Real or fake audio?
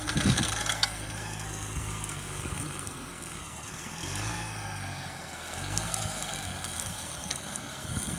fake